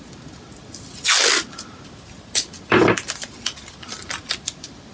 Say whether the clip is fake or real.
real